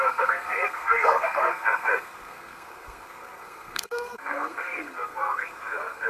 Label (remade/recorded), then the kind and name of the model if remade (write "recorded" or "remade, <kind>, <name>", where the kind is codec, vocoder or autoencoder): remade, codec, SNAC